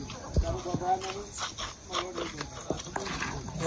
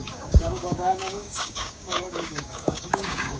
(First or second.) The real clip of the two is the first